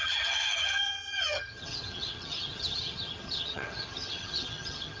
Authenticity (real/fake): fake